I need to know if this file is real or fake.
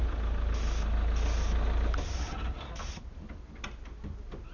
real